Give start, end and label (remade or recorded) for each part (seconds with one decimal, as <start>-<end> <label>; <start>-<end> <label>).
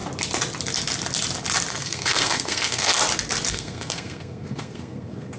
0.0-1.7 recorded; 1.7-3.0 remade; 3.0-3.5 recorded; 3.5-5.4 remade